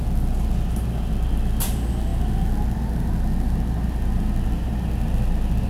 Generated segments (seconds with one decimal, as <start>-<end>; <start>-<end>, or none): none